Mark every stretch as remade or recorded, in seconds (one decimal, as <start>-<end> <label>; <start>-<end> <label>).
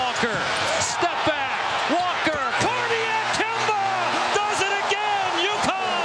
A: 0.0-6.0 recorded